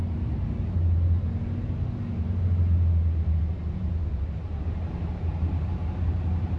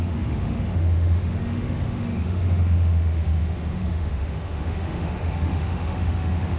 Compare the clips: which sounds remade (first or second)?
second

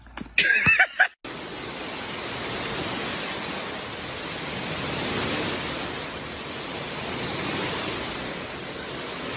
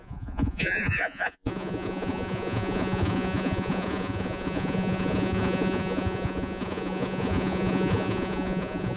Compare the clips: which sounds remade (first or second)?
second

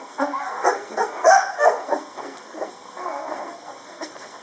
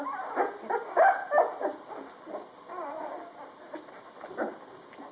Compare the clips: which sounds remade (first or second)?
first